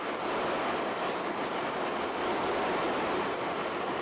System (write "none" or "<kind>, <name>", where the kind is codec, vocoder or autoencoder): none